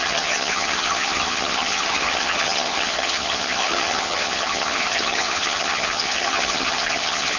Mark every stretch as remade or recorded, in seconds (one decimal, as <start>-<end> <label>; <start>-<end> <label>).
0.0-7.4 remade